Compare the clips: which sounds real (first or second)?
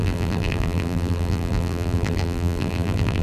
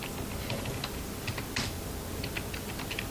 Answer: second